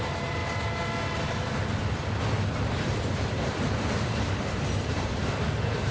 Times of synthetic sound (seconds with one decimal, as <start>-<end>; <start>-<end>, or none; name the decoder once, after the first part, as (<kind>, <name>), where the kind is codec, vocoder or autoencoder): 0.0-0.4 (vocoder, BigVGAN v2); 2.8-5.9